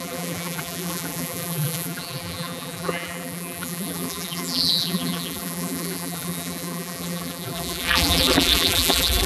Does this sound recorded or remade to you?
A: remade